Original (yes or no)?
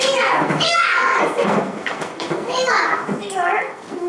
no